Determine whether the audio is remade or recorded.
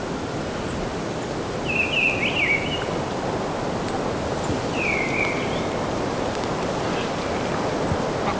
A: recorded